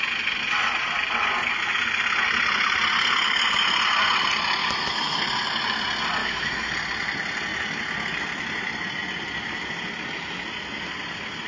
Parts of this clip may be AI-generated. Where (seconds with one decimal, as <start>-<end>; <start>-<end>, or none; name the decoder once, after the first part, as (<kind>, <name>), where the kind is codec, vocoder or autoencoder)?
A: 4.6-5.2 (autoencoder, DAC-VAE); 6.2-6.7